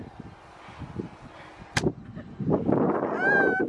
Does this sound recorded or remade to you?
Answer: recorded